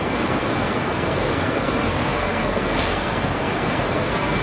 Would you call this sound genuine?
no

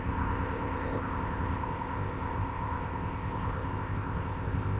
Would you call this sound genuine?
no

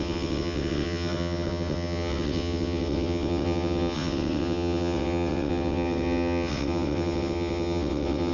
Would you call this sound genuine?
no